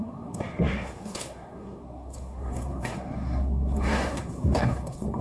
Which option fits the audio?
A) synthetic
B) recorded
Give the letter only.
A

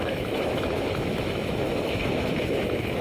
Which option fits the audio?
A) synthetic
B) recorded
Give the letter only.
A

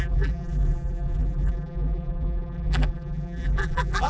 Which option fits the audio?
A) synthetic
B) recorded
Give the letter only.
A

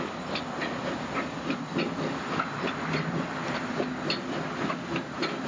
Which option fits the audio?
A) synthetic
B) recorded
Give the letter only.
B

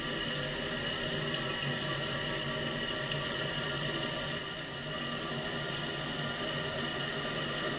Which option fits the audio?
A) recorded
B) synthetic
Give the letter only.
A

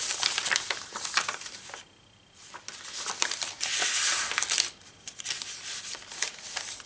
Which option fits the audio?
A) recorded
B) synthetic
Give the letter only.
B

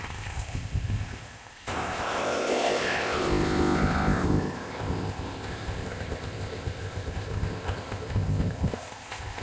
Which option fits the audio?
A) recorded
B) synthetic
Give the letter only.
B